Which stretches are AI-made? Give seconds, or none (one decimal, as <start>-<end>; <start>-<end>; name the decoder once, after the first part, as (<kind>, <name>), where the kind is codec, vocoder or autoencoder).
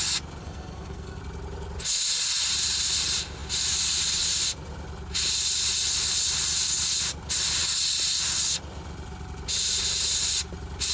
0.4-1.2 (codec, SNAC)